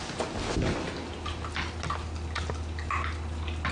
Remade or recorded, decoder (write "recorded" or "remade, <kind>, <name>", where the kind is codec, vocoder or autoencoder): recorded